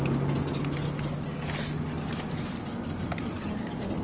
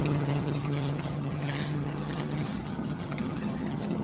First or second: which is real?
first